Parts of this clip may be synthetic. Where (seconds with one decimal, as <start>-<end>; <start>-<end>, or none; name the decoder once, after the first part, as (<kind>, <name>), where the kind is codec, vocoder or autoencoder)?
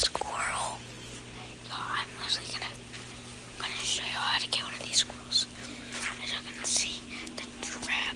none